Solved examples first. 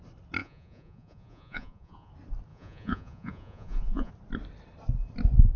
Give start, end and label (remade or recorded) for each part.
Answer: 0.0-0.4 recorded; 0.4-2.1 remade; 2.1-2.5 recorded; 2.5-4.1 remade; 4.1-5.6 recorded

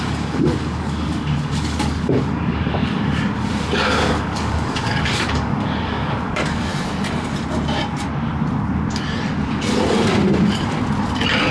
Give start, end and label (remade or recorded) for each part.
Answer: 0.0-6.7 remade; 6.7-11.5 recorded

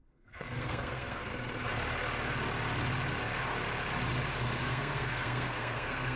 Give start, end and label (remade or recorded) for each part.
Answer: 0.0-1.3 remade; 1.3-4.6 recorded; 4.6-6.2 remade

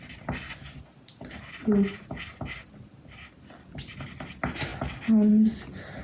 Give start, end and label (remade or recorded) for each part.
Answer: 0.0-6.0 recorded